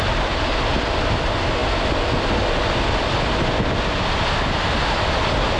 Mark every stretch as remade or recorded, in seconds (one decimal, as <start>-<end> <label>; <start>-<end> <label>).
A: 0.0-5.6 recorded